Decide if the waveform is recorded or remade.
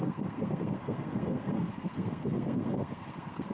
remade